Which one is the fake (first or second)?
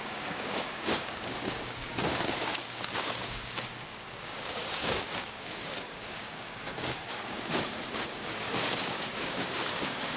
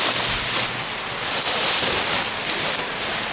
first